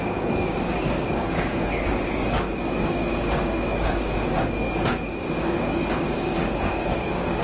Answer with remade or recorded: remade